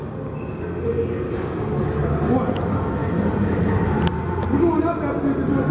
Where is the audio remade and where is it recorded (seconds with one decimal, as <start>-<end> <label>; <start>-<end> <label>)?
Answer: 0.0-5.7 recorded